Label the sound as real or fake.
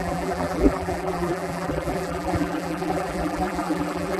fake